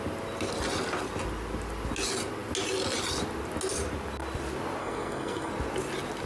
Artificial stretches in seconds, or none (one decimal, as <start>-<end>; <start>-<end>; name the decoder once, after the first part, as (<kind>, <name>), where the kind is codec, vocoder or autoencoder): 4.8-5.5 (codec, SNAC)